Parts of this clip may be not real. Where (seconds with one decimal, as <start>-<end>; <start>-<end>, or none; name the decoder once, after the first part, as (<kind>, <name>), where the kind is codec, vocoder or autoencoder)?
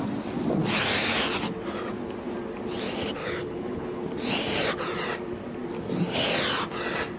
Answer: 3.2-4.0 (codec, HILCodec)